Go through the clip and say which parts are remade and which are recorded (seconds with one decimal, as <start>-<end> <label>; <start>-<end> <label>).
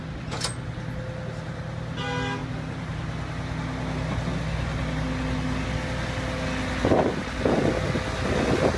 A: 0.0-8.8 recorded